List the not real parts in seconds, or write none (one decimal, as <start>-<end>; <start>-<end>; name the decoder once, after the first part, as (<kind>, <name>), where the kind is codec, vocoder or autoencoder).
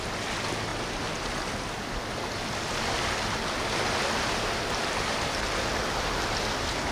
none